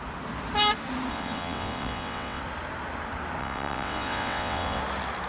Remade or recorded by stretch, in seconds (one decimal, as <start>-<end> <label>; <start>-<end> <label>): 0.0-1.1 recorded; 1.1-2.4 remade; 2.4-3.4 recorded; 3.4-4.8 remade; 4.8-5.3 recorded